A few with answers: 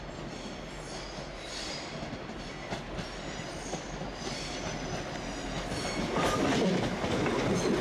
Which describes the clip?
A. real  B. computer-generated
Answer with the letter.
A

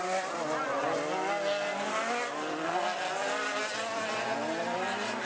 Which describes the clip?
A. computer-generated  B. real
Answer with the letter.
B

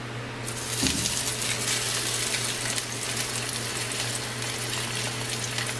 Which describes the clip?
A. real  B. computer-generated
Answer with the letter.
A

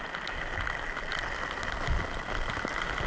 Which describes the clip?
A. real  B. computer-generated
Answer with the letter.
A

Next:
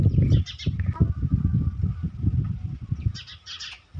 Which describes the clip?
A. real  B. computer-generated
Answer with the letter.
A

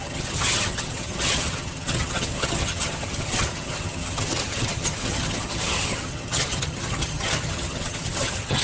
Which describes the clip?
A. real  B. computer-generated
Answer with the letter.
B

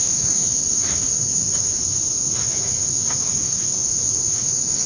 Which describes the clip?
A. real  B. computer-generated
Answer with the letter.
B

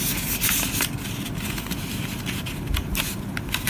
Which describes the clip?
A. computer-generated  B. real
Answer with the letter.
B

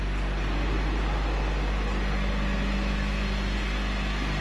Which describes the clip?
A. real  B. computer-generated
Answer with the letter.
A